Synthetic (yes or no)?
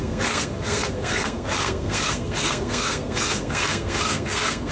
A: yes